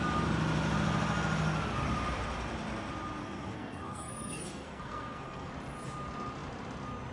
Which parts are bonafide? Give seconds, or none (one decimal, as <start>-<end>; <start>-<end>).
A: 0.0-3.2; 5.5-7.1

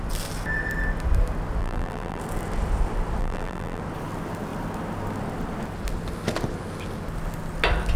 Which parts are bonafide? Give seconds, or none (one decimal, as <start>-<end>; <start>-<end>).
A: 0.0-1.6; 2.2-3.2; 3.8-8.0

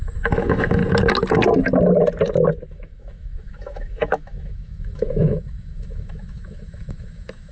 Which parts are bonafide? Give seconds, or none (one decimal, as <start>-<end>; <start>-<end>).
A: 0.8-2.7

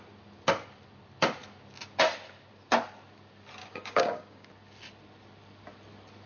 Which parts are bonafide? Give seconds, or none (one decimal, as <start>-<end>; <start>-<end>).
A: 0.0-3.6; 4.5-6.3

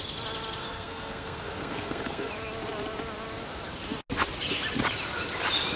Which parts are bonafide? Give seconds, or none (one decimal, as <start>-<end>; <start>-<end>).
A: 0.0-0.6; 2.3-5.8